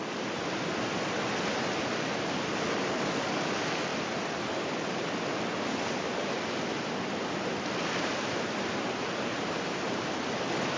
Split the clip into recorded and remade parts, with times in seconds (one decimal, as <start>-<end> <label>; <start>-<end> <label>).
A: 0.0-10.8 recorded